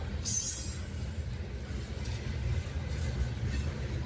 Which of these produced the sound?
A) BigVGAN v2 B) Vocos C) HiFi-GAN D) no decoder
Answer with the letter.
D